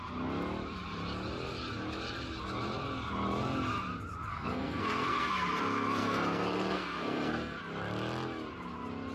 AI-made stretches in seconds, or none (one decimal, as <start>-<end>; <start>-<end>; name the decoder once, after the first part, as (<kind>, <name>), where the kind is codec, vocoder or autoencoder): 4.3-7.6 (codec, SNAC)